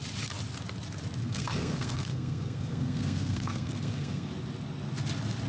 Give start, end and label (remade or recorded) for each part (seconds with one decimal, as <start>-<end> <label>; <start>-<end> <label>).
0.0-1.2 recorded; 1.2-4.3 remade; 4.3-5.5 recorded